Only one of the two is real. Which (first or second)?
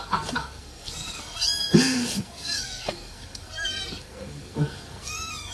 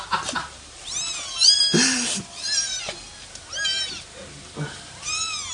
second